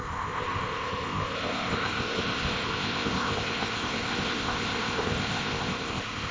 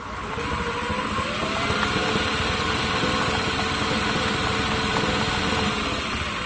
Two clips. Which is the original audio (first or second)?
second